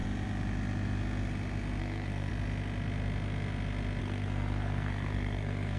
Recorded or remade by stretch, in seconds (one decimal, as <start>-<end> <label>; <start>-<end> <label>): 0.0-1.8 recorded; 1.8-2.3 remade; 2.3-4.0 recorded; 4.0-5.8 remade